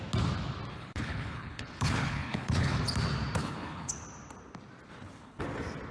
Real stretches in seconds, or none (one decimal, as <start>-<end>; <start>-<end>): 0.0-0.7; 2.8-3.4; 3.9-4.9; 5.4-5.9